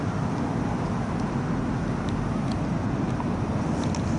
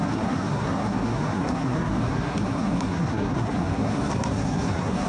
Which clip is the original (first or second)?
first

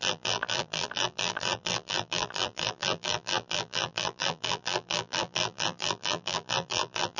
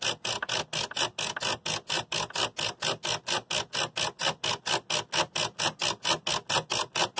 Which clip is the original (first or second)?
second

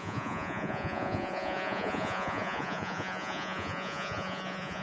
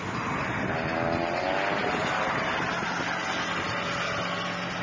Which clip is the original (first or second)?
second